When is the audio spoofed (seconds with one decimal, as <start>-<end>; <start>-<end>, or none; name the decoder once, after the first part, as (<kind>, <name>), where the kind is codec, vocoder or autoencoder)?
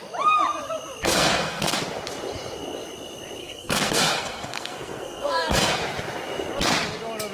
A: 1.1-1.8 (codec, SNAC); 3.4-5.8